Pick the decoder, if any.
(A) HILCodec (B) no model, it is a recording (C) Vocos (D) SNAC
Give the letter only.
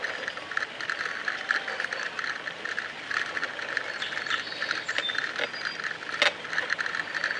B